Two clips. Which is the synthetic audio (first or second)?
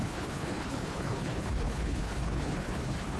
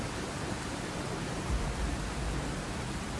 first